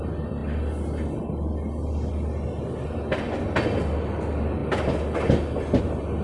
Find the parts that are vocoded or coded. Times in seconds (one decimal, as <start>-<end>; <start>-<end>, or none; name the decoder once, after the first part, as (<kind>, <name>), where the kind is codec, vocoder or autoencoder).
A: none